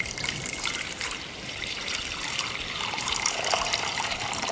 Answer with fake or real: fake